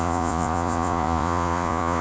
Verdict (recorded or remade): remade